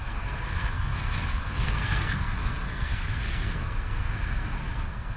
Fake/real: fake